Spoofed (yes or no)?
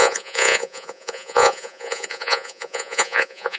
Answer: yes